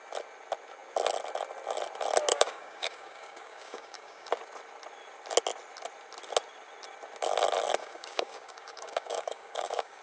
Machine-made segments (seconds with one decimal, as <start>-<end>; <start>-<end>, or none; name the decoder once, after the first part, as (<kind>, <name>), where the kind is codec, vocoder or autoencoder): 2.3-4.3 (codec, DAC); 7.8-10.0